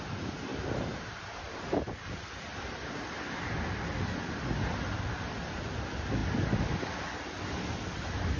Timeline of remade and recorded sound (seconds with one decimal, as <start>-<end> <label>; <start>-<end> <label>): 0.0-2.5 remade; 2.5-5.0 recorded; 5.0-6.2 remade; 6.2-6.8 recorded; 6.8-8.4 remade